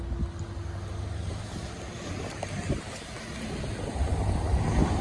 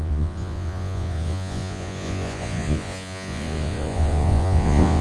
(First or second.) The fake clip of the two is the second